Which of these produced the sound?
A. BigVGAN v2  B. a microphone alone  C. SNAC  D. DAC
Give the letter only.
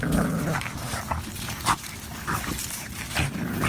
B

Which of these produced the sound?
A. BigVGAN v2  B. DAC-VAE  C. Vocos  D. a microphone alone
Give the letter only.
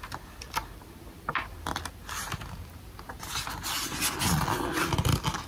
D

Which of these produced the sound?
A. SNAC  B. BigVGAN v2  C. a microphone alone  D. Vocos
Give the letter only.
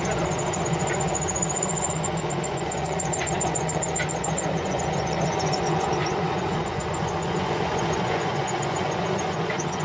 D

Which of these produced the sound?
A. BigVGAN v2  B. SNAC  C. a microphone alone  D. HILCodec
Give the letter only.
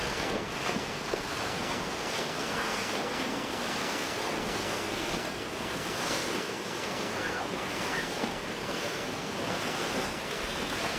B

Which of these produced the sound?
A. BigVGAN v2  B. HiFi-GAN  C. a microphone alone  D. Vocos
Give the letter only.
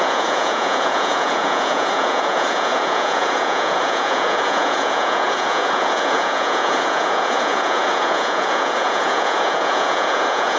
D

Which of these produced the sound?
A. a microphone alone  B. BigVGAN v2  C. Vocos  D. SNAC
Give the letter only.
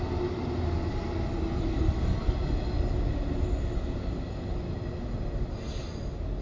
A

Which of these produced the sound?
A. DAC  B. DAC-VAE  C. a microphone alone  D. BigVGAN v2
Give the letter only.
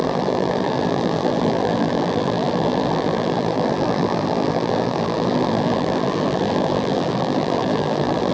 D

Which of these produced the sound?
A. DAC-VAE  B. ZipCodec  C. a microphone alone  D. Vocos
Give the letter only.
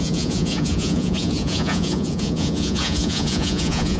D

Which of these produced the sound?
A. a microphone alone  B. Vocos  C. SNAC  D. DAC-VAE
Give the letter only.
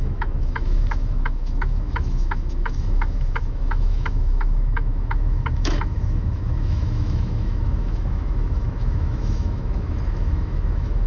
D